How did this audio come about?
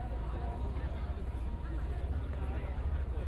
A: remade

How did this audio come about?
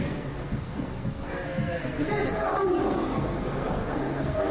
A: remade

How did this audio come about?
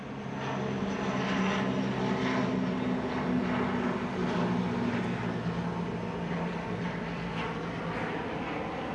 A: recorded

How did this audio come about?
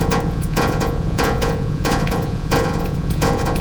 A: remade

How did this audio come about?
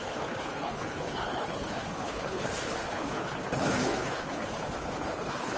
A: remade